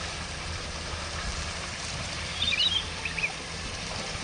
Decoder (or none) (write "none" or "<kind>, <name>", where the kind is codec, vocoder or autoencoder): vocoder, BigVGAN v2